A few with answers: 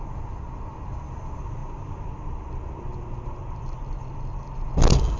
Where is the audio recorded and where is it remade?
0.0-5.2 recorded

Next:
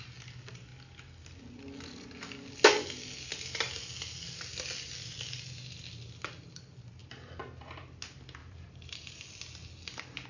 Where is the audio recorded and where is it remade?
0.0-8.4 recorded; 8.4-9.2 remade; 9.2-10.3 recorded

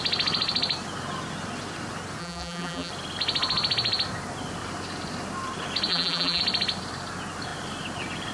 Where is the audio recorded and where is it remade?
0.0-2.2 recorded; 2.2-2.9 remade; 2.9-5.9 recorded; 5.9-6.4 remade; 6.4-8.3 recorded

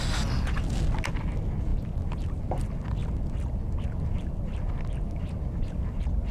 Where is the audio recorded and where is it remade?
0.0-6.3 recorded